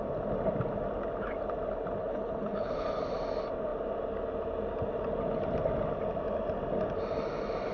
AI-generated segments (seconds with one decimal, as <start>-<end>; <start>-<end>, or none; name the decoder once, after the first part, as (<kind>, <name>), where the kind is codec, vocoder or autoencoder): 2.0-3.0 (codec, HILCodec)